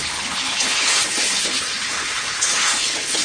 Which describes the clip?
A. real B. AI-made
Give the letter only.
B